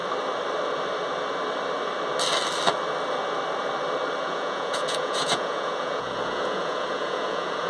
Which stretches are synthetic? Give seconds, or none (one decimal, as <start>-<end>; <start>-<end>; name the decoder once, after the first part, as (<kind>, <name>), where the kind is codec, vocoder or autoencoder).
4.2-7.7 (vocoder, Vocos)